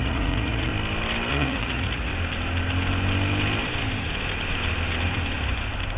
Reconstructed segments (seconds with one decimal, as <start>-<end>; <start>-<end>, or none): 0.0-0.7; 1.3-2.1